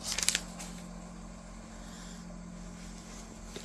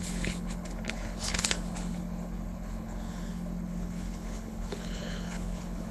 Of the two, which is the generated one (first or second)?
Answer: second